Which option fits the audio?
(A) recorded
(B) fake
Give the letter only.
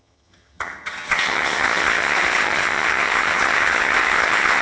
B